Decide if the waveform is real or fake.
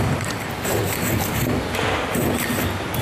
fake